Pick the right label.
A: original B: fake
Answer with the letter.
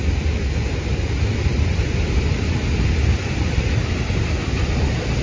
A